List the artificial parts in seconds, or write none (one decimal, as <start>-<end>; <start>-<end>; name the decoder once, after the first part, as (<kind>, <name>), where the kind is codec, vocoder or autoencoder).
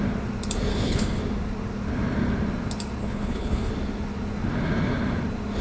0.7-1.2 (codec, HILCodec); 3.0-3.7